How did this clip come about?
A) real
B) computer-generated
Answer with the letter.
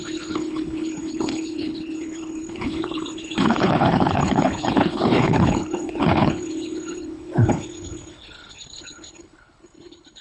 B